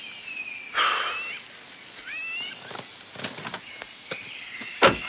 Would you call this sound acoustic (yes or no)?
yes